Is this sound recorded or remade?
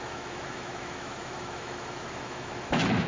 remade